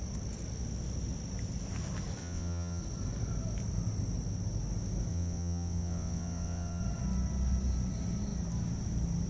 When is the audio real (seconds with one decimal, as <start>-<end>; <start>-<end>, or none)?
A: 0.0-2.2; 2.8-5.1; 6.8-9.3